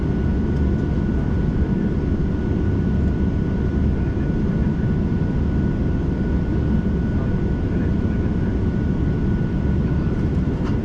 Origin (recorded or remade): recorded